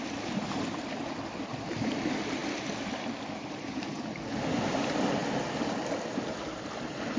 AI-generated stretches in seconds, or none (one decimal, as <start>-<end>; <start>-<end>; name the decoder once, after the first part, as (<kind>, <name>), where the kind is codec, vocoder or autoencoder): 0.0-2.4 (vocoder, BigVGAN v2); 3.2-5.2; 6.1-7.2